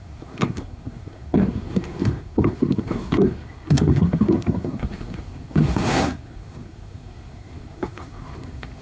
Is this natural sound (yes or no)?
no